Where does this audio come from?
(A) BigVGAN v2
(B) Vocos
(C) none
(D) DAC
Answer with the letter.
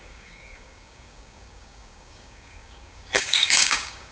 D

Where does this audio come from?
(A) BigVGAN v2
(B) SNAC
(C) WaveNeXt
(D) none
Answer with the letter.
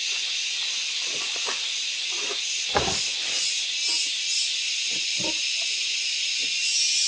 D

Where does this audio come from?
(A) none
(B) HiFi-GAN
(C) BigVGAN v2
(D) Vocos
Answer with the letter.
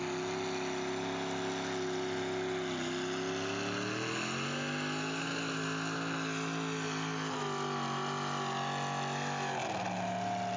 A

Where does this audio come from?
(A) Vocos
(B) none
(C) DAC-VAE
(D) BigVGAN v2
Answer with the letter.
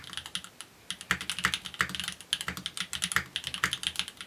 B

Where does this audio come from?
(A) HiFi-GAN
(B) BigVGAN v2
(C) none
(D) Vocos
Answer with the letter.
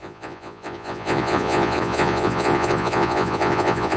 D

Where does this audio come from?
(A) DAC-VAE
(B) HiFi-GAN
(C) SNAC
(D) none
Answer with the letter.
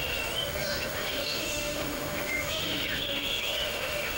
A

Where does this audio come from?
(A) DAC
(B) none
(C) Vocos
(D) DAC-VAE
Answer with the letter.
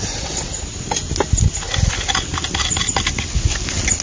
B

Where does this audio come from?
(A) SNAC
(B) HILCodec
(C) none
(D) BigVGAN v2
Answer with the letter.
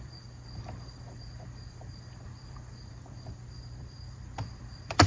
D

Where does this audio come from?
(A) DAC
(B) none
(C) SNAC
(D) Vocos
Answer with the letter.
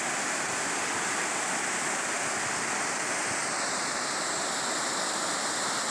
B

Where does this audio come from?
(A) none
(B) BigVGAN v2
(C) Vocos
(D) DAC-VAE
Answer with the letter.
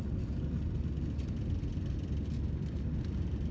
A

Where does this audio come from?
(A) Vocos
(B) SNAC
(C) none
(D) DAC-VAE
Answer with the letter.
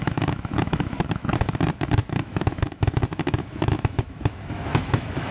D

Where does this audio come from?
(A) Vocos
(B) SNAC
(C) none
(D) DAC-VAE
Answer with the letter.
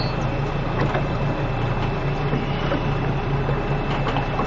C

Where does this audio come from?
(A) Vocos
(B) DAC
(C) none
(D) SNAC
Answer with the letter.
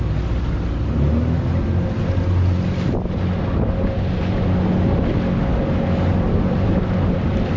C